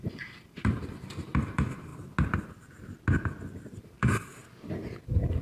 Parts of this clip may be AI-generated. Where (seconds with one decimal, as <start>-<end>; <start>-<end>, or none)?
0.0-1.9; 3.8-4.4; 5.0-5.4